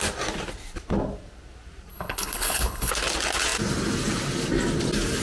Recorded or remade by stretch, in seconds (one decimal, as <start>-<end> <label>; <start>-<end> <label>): 0.0-1.9 recorded; 1.9-2.9 remade; 2.9-5.2 recorded